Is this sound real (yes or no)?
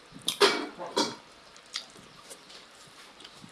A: no